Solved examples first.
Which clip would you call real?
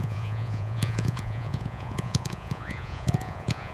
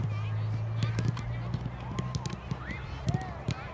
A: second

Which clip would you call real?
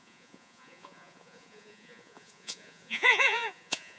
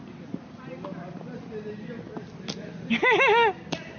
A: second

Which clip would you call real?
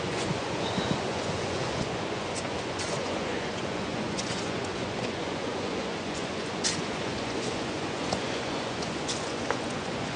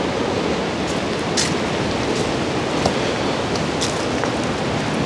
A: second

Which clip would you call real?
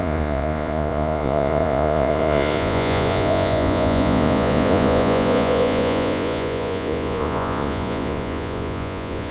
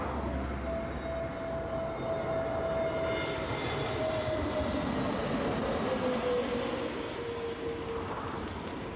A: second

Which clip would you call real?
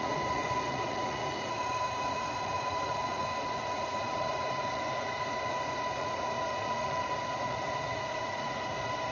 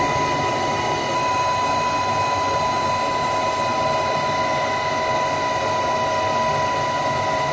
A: second